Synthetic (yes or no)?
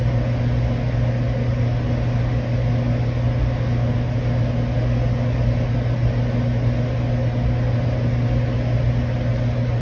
no